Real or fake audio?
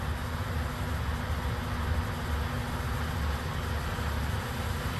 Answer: real